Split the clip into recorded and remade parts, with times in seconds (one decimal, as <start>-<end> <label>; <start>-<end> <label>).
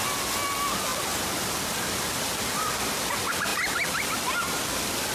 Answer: 0.0-5.1 recorded